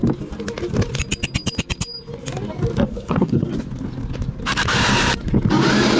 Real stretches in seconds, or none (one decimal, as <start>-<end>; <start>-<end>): 0.0-2.9; 3.5-6.0

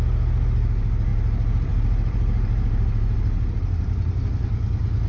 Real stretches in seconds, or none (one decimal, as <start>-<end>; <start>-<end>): 0.0-1.1; 4.2-5.1

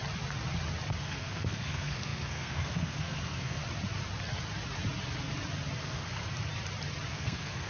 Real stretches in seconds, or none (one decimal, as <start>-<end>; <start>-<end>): 0.0-1.0; 3.6-5.8; 6.2-7.1

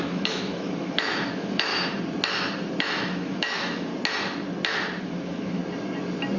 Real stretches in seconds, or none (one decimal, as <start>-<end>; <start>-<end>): 1.7-2.8; 3.9-5.0; 5.6-6.4